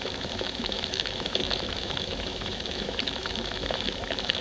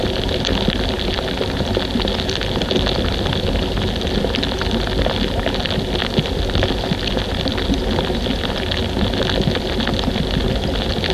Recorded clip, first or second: second